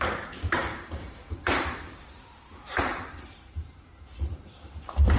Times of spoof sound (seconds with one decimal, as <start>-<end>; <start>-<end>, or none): 0.6-3.7